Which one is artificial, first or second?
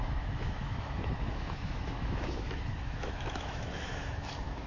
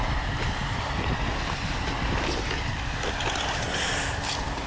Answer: first